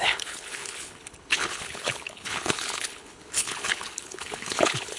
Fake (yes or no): yes